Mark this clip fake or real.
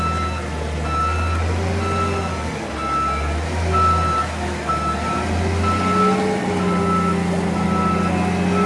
real